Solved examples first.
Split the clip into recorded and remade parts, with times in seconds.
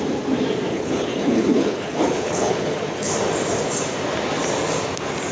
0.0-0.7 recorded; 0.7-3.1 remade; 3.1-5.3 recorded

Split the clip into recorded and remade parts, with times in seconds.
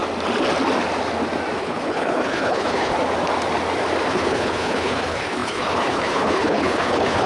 0.0-1.6 recorded; 1.6-2.9 remade; 2.9-4.1 recorded; 4.1-7.3 remade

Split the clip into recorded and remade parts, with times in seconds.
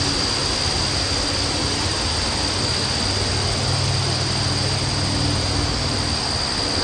0.0-6.8 recorded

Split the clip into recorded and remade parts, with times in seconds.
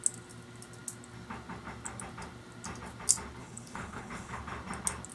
0.0-3.4 recorded; 3.4-4.4 remade; 4.4-5.1 recorded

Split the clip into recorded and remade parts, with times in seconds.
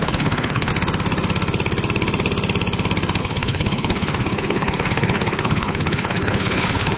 0.0-0.7 remade; 0.7-3.2 recorded; 3.2-7.0 remade